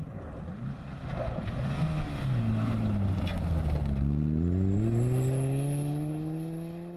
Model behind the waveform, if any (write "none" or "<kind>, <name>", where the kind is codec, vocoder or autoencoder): none